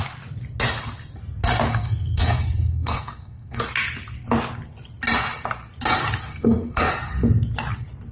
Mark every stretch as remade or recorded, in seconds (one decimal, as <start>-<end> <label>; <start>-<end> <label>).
0.0-1.7 recorded; 1.7-3.6 remade; 3.6-6.3 recorded; 6.3-6.9 remade; 6.9-8.1 recorded